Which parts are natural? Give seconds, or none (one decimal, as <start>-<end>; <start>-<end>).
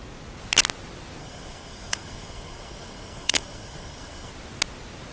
0.0-1.2; 4.3-5.1